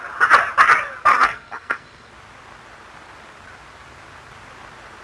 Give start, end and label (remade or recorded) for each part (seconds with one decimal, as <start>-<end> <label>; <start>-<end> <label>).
0.0-1.1 recorded; 1.1-2.1 remade; 2.1-5.0 recorded